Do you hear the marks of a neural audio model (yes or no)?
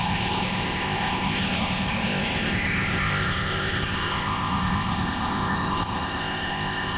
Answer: yes